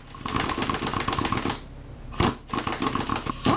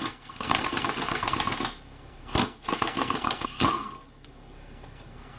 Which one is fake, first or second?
second